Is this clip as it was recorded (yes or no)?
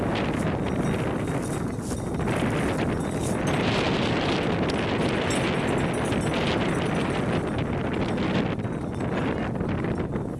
yes